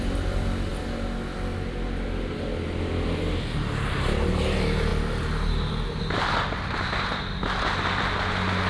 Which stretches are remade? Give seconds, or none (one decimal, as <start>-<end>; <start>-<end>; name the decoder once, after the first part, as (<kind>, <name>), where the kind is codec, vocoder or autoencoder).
none